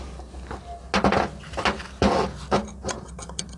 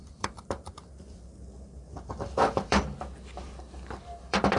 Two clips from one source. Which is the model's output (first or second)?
second